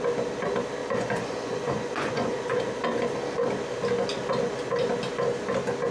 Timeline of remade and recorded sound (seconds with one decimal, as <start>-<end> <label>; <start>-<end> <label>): 0.0-0.8 recorded; 0.8-2.7 remade; 2.7-5.9 recorded